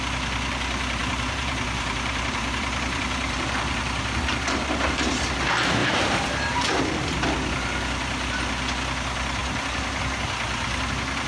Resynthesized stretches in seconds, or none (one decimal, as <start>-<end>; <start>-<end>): 1.0-5.1; 5.8-6.8; 9.4-10.0